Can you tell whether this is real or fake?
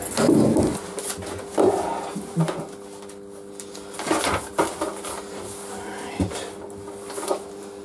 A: real